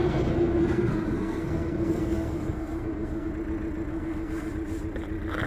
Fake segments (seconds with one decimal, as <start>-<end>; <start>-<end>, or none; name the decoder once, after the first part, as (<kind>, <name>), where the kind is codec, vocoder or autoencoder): 0.0-3.3 (codec, SNAC); 3.9-4.5